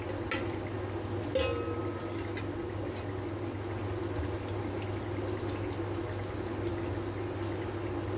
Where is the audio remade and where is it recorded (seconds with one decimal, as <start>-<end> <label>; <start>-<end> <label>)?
0.0-8.2 recorded